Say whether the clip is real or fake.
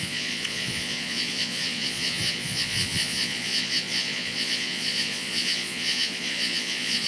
fake